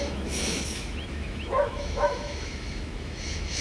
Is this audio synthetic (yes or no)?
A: yes